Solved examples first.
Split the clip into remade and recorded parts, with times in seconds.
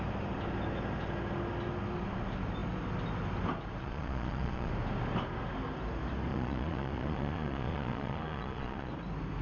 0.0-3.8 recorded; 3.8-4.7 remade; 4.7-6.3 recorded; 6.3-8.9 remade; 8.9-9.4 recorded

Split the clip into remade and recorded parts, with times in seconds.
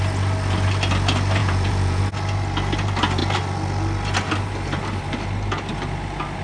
0.0-1.4 recorded; 1.4-2.0 remade; 2.0-6.4 recorded